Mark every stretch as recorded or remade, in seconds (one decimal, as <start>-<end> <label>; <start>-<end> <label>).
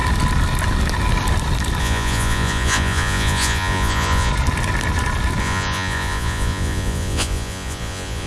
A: 0.0-1.8 recorded; 1.8-4.3 remade; 4.3-5.4 recorded; 5.4-8.3 remade